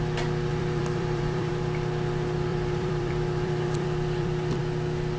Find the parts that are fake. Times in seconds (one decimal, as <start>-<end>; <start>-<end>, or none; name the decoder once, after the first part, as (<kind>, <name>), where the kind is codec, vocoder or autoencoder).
0.5-1.5 (vocoder, BigVGAN v2); 2.5-4.6